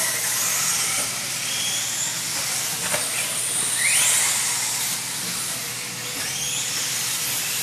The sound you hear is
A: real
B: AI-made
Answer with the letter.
A